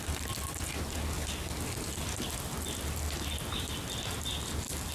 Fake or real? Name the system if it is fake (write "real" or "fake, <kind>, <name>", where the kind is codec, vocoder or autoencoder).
real